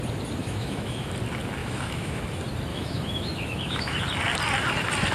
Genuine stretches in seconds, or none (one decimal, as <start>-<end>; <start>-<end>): 0.0-0.4; 1.1-1.6; 2.2-2.7; 4.0-5.1

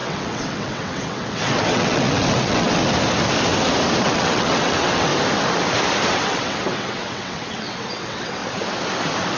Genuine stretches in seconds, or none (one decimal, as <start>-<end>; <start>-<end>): 2.8-4.0; 5.1-6.1; 8.4-9.4

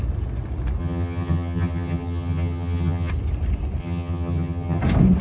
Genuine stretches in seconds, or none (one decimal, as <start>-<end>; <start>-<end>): 0.0-0.8; 3.1-3.8; 4.8-5.2

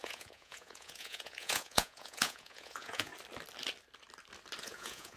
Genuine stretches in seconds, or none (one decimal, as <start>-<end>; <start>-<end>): 3.1-4.6